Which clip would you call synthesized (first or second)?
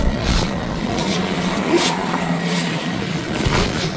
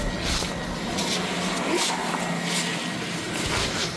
first